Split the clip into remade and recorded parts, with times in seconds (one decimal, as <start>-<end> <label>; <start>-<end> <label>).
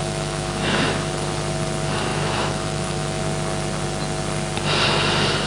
0.0-1.1 remade; 1.1-2.1 recorded; 2.1-3.2 remade; 3.2-5.5 recorded